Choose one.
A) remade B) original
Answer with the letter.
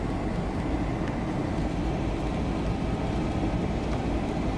B